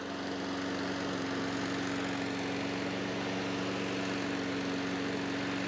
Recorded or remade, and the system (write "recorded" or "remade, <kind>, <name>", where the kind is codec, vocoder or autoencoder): recorded